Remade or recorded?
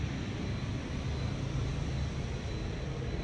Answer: recorded